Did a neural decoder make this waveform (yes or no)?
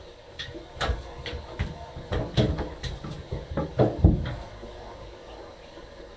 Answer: yes